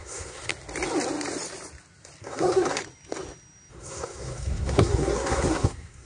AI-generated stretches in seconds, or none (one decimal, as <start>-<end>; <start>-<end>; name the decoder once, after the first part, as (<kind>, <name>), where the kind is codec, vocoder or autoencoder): 0.0-0.5 (codec, SNAC); 2.2-2.8; 3.7-6.1